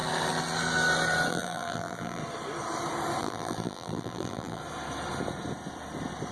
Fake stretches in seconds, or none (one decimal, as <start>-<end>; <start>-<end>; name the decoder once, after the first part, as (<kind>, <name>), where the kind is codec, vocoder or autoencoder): 1.3-2.2 (vocoder, BigVGAN v2); 3.2-4.6